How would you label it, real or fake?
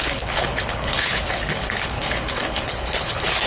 fake